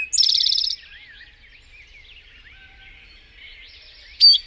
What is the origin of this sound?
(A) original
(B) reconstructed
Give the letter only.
A